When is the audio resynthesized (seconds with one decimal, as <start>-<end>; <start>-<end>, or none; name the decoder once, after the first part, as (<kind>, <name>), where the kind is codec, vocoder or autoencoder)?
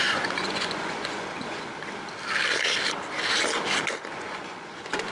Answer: 0.0-1.7 (vocoder, Vocos); 4.1-5.1